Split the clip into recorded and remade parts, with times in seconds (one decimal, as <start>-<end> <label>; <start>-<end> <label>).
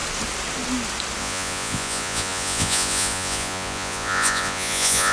0.0-1.2 recorded; 1.2-5.1 remade